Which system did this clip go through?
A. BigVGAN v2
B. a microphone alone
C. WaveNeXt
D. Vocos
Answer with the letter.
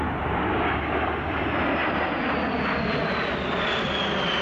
B